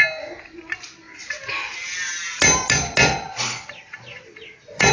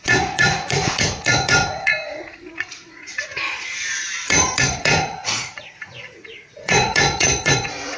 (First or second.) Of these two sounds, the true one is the first